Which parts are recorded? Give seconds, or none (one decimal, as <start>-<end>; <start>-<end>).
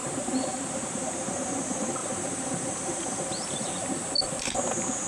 1.1-2.0; 4.1-5.1